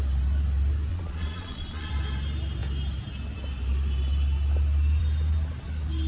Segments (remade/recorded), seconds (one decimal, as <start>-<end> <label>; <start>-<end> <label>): 0.0-0.9 recorded; 0.9-1.9 remade; 1.9-6.1 recorded